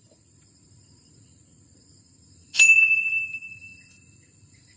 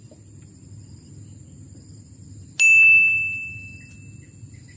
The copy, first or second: first